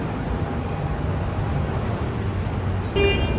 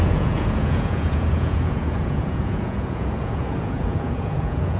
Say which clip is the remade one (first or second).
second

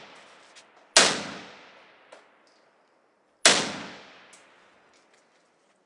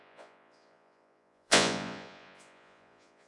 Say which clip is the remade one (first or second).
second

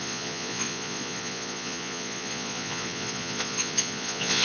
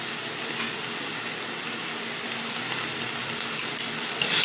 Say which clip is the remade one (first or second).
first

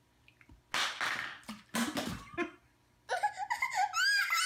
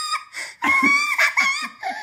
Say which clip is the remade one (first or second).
second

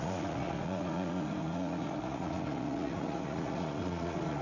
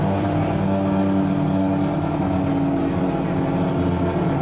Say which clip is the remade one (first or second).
first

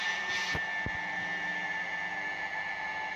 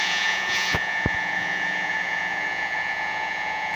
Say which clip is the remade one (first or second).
second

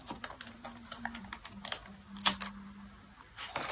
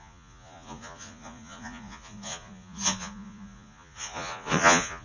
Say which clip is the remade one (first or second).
second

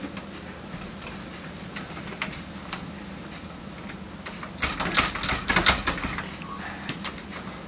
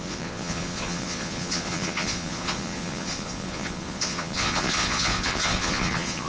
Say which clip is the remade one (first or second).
second